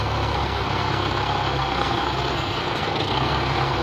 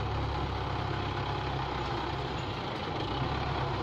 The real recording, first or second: second